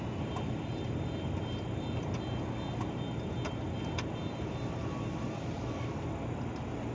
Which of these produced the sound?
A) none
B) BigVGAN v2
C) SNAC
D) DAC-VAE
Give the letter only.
A